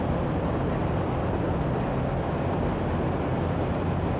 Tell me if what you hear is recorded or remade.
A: recorded